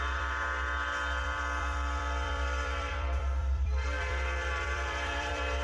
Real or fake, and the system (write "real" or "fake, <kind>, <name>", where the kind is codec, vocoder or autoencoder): fake, vocoder, BigVGAN v2